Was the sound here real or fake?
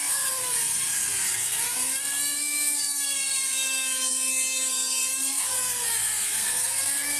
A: fake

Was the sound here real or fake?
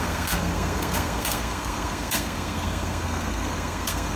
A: fake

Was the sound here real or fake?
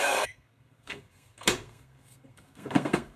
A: fake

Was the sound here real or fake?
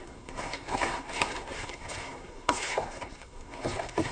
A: fake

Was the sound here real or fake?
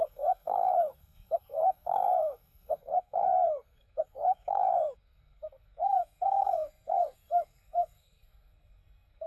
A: fake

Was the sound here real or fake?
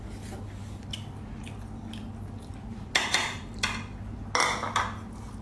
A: real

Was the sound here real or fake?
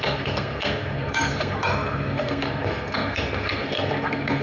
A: fake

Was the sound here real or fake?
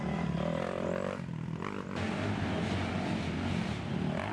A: real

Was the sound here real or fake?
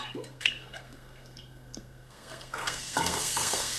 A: fake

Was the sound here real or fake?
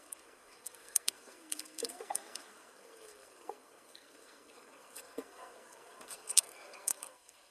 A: fake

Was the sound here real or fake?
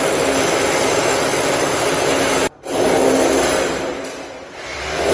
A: real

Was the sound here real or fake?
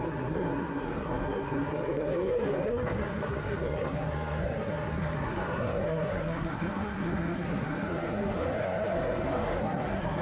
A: fake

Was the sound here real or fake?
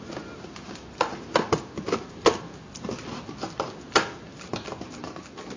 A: real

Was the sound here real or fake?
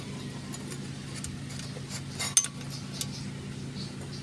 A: real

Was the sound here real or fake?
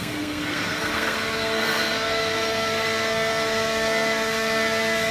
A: fake